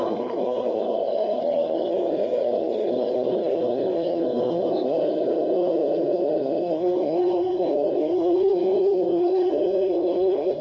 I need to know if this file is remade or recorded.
remade